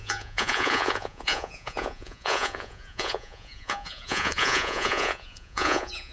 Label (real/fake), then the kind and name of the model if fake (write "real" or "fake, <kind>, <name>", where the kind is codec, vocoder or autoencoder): fake, vocoder, Vocos